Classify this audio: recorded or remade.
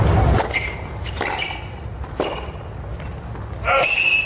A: recorded